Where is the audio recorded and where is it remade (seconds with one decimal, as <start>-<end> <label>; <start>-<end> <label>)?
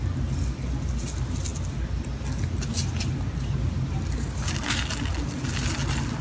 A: 0.0-6.2 recorded